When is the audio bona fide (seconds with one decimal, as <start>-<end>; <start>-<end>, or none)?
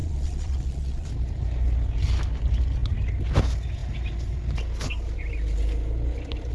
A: 1.1-6.5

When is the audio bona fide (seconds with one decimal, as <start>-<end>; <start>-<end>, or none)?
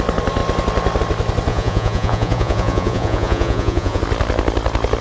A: 0.0-1.5; 4.0-5.0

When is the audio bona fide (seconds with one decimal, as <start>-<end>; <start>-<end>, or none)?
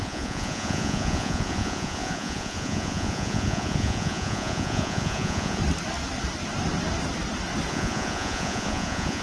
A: 5.6-7.7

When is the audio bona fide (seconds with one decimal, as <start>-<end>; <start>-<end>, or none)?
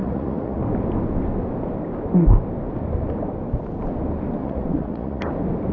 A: 0.6-4.4; 5.2-5.7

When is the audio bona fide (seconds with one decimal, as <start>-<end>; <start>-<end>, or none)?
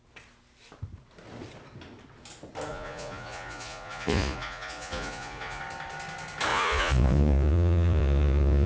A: 0.0-2.7; 5.6-6.5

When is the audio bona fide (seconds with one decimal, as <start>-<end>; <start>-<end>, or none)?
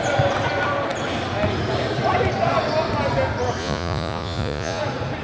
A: 0.0-3.6; 4.8-5.2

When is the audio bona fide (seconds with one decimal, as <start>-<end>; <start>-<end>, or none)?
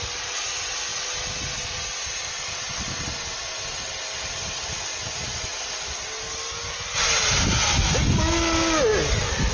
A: 0.0-9.5